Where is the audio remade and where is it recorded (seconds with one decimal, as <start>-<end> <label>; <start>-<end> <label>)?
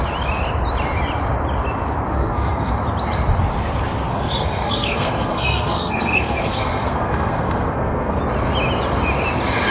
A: 0.0-2.1 recorded; 2.1-2.7 remade; 2.7-4.1 recorded; 4.1-8.2 remade; 8.2-9.7 recorded